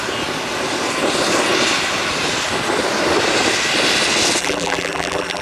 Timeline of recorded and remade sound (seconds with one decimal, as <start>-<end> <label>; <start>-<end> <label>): 0.0-4.4 recorded; 4.4-5.4 remade